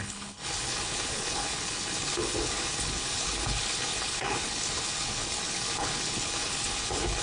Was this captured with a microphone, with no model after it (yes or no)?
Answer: no